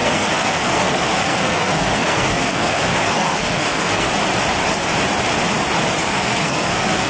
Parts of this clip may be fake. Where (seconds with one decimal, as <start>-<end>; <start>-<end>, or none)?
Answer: 0.0-4.1; 6.0-7.1